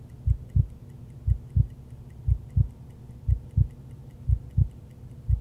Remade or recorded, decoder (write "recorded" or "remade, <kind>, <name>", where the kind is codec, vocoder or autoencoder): recorded